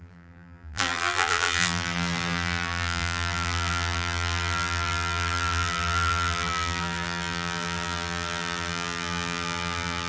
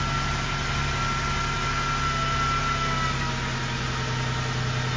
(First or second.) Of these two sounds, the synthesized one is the first